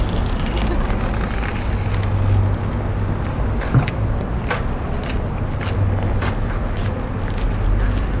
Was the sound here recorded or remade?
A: recorded